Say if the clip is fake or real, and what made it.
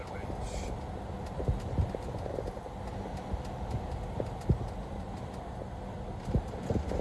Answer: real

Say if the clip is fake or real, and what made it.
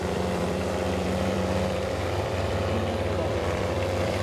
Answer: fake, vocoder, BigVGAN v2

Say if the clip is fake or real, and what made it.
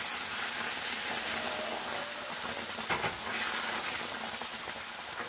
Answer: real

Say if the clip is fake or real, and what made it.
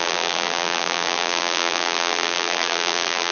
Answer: fake, vocoder, BigVGAN v2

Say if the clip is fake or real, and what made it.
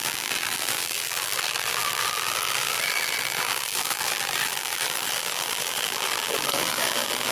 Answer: fake, vocoder, BigVGAN v2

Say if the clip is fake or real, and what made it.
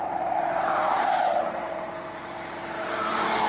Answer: fake, vocoder, BigVGAN v2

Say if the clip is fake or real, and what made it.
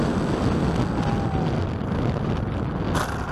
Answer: real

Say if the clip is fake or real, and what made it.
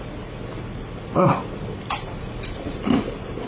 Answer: fake, vocoder, BigVGAN v2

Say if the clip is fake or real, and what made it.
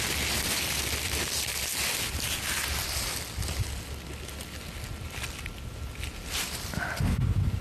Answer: real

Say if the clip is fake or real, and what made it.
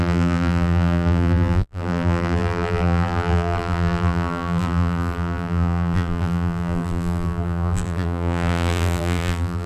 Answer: fake, vocoder, BigVGAN v2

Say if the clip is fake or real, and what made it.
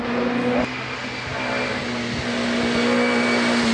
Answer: real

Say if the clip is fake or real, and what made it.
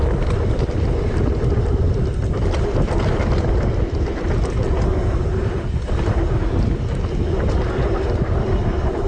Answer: real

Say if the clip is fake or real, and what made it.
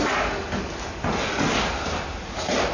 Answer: real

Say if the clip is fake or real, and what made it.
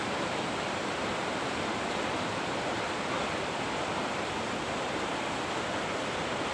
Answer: fake, vocoder, BigVGAN v2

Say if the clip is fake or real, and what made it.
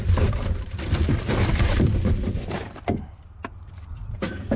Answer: fake, vocoder, BigVGAN v2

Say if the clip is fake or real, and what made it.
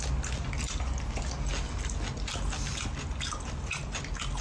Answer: real